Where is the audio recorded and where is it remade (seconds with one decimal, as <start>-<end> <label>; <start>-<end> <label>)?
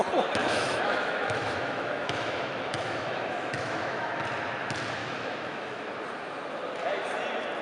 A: 0.0-0.4 recorded; 0.4-4.2 remade; 4.2-5.0 recorded; 5.0-5.9 remade; 5.9-7.6 recorded